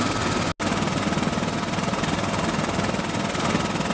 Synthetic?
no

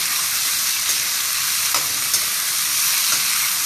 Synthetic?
no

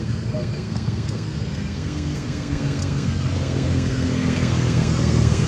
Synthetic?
yes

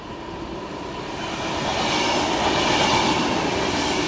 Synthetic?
no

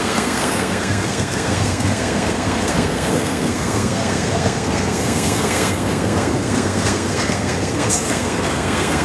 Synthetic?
yes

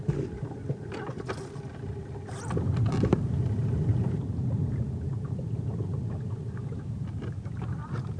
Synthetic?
no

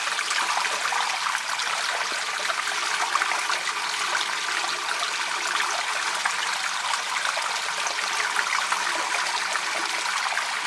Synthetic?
no